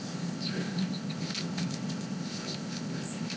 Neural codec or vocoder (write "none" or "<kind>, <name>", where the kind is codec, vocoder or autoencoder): codec, ZipCodec